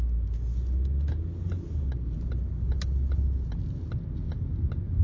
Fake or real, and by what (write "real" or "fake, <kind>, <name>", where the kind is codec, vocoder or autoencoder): real